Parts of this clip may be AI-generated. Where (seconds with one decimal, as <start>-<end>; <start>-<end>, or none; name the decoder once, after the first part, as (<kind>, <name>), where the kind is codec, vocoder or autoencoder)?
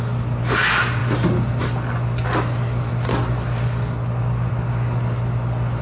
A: none